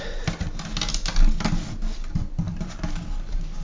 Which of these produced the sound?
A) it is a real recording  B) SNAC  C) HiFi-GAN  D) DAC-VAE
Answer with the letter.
A